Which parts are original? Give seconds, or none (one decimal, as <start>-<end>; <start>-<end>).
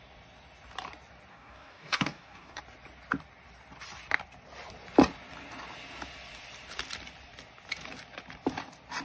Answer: 0.0-1.3; 2.6-9.0